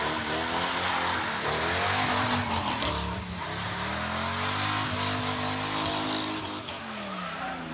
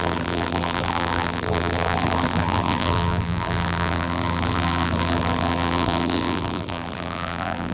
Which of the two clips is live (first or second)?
first